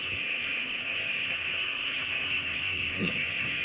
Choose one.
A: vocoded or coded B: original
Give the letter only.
A